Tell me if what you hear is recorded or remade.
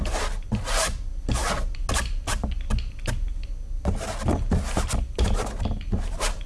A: recorded